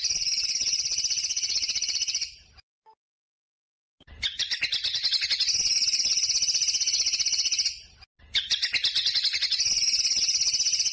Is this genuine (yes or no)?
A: yes